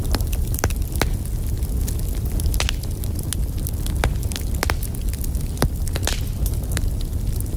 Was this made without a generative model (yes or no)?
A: yes